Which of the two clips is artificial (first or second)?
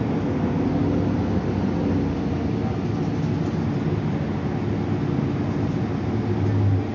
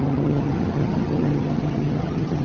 second